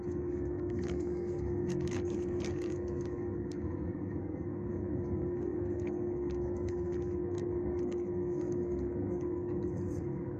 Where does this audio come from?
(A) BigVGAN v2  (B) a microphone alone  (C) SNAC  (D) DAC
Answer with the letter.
C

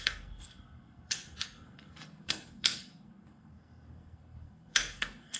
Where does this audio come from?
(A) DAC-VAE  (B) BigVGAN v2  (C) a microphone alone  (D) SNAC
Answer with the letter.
D